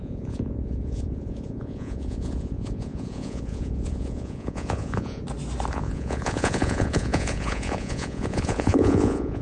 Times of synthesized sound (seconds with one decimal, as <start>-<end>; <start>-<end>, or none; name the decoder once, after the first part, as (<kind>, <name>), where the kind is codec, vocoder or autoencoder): 0.0-5.2 (vocoder, Vocos); 5.7-9.4